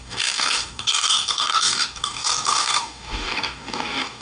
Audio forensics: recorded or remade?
remade